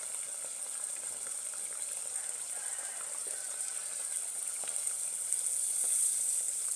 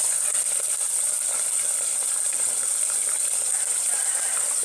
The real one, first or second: first